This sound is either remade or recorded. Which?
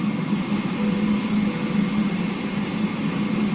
recorded